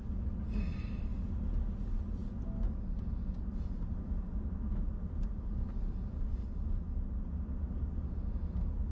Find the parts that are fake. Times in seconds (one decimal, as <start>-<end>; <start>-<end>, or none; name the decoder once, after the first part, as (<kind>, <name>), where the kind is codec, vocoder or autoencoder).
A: none

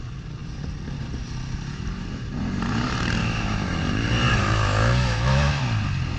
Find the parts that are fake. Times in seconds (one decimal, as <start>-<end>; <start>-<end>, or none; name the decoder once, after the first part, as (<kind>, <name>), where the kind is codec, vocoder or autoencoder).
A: 3.2-3.8 (autoencoder, DAC-VAE); 4.4-5.6

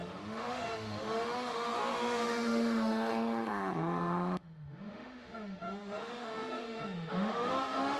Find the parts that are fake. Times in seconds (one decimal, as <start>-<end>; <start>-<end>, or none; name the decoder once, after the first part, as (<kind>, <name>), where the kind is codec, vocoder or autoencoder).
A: 0.0-8.0 (autoencoder, DAC-VAE)

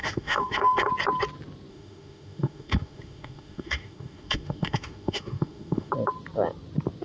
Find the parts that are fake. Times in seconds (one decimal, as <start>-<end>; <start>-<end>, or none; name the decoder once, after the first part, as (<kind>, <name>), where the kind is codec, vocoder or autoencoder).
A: 0.0-0.9 (autoencoder, DAC-VAE); 1.7-5.9

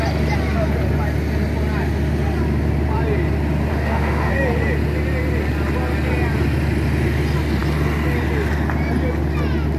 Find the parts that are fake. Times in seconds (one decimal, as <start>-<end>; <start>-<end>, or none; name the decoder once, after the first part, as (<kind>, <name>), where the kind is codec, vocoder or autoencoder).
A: 3.7-4.3 (autoencoder, DAC-VAE)